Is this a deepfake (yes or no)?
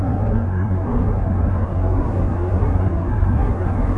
yes